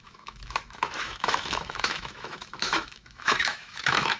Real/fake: fake